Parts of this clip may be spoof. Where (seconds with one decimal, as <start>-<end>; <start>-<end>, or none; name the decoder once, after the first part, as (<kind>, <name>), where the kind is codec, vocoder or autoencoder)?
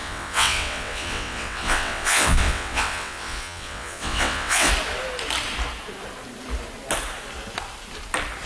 0.0-4.7 (vocoder, WaveNeXt)